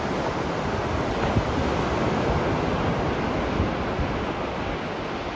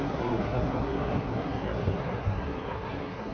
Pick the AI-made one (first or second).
second